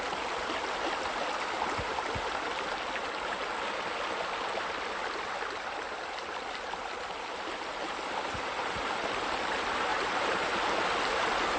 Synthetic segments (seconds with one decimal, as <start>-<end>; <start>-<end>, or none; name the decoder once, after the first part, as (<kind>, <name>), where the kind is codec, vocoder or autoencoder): none